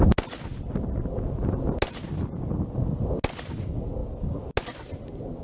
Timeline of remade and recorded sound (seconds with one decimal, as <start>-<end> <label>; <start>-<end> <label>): 0.0-5.4 recorded